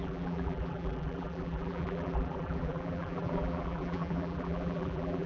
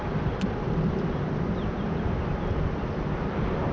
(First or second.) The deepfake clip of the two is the first